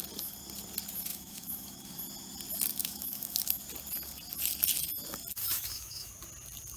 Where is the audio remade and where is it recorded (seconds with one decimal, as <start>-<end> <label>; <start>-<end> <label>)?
0.0-1.1 recorded; 1.1-2.0 remade; 2.0-2.7 recorded; 2.7-3.6 remade; 3.6-5.4 recorded; 5.4-6.1 remade; 6.1-6.8 recorded